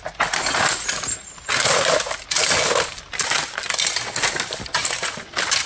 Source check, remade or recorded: recorded